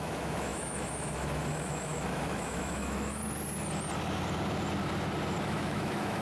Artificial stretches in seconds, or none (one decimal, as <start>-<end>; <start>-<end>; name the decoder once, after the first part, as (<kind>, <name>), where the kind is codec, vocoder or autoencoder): 0.0-3.2 (autoencoder, DAC-VAE); 5.4-6.2